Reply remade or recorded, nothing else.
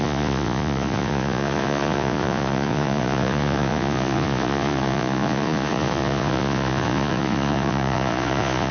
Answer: remade